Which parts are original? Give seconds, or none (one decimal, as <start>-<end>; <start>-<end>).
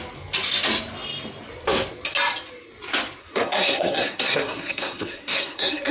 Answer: 0.0-3.2